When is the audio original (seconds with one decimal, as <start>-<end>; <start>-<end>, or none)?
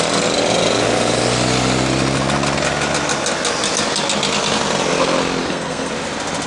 0.0-5.4; 5.9-6.5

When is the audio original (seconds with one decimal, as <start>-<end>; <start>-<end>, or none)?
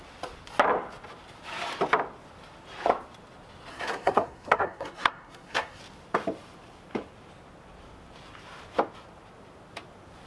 0.0-3.7; 5.8-10.3